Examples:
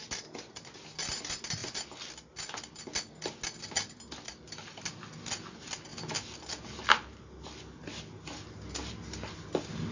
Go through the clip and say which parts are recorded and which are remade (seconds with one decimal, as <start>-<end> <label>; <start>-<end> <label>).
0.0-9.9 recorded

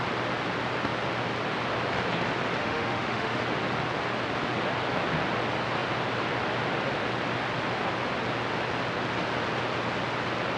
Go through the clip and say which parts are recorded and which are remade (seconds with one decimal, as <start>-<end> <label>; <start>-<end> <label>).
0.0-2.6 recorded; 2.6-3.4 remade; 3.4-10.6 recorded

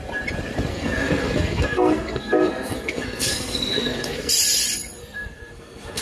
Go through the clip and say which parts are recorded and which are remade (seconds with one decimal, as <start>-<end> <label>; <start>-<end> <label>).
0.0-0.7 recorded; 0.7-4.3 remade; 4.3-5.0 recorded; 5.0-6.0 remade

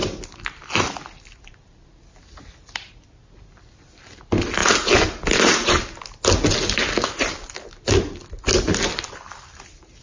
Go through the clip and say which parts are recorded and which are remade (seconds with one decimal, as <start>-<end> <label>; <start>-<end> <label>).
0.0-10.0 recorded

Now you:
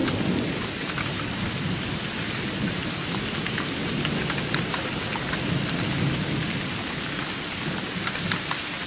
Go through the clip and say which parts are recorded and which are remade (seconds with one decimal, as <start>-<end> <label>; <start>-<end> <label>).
0.0-8.9 recorded